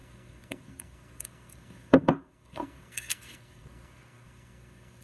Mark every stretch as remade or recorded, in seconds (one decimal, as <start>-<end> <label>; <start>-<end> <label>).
0.0-5.0 remade